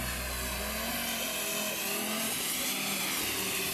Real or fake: real